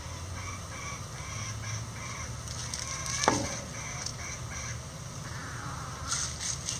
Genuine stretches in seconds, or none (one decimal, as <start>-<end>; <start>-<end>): 0.0-2.6; 3.2-4.1; 5.7-6.8